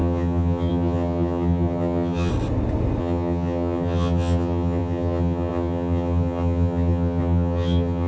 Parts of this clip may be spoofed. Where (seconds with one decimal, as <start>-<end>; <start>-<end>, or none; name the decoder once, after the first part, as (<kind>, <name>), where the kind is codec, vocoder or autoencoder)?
0.0-2.3 (vocoder, HiFi-GAN); 3.0-8.1